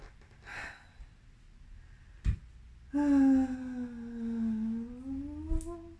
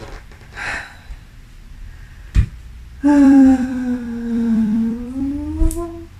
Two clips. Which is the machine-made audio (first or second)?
second